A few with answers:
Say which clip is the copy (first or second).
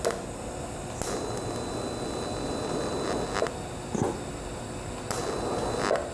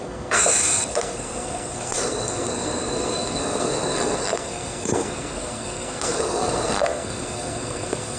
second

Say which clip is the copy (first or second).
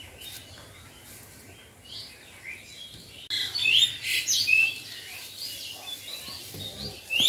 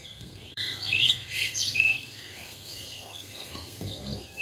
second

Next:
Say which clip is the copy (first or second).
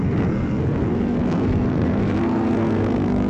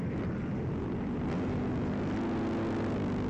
first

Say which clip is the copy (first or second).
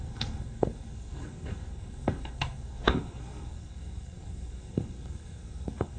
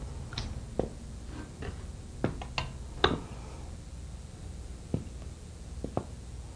first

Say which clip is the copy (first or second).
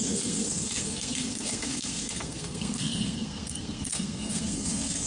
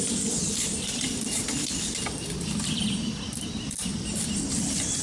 first